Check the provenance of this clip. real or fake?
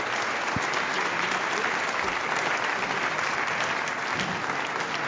real